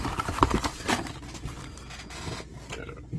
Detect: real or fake real